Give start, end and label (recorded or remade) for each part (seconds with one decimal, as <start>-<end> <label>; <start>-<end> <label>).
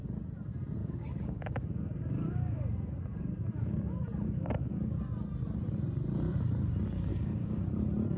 0.0-0.8 recorded; 0.8-5.0 remade; 5.0-7.1 recorded; 7.1-7.6 remade; 7.6-8.2 recorded